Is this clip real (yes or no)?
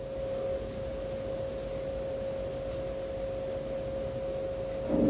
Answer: yes